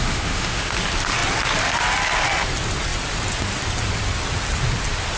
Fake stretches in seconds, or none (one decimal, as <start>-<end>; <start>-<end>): 0.0-0.7